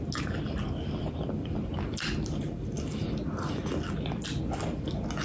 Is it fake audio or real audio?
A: real